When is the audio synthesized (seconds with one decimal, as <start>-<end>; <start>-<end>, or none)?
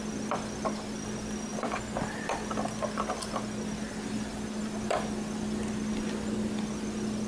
none